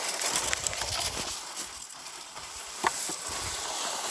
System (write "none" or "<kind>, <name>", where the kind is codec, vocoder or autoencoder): none